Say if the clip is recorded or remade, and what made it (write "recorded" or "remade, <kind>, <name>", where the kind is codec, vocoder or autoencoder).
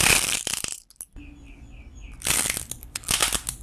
recorded